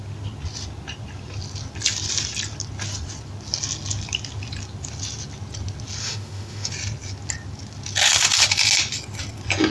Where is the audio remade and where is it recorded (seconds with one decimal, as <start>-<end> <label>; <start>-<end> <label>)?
0.0-6.0 recorded; 6.0-6.7 remade; 6.7-9.7 recorded